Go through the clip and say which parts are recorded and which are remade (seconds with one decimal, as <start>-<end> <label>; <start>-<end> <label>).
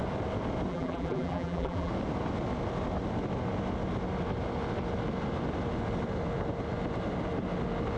0.0-0.7 recorded; 0.7-1.9 remade; 1.9-8.0 recorded